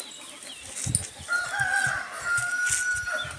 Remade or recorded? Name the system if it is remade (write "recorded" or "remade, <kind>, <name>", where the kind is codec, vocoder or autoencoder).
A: recorded